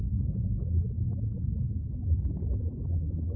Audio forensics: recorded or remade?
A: recorded